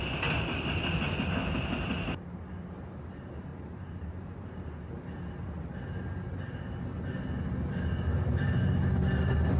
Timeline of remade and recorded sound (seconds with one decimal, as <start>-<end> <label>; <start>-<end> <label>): 0.0-3.5 recorded; 3.5-4.9 remade; 4.9-9.6 recorded